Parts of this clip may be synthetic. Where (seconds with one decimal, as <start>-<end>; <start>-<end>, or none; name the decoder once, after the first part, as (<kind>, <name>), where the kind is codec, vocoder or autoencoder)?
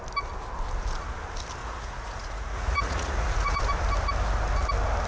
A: 1.6-3.6 (vocoder, Vocos)